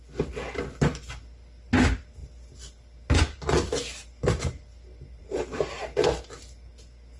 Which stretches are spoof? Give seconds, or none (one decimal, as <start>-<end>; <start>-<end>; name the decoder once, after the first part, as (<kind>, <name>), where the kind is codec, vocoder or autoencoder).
5.2-5.8 (vocoder, BigVGAN v2)